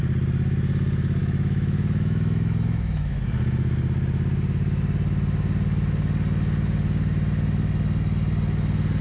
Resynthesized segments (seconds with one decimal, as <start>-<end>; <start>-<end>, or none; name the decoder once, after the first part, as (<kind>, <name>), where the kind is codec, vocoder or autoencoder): 1.2-3.3 (autoencoder, DAC-VAE)